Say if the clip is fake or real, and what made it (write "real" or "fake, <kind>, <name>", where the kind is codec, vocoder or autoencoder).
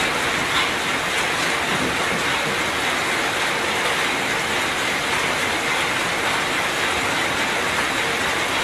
real